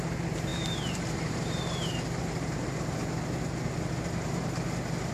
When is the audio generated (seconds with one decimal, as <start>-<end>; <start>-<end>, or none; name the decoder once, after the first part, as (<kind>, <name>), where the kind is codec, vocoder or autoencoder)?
0.0-3.0 (vocoder, BigVGAN v2)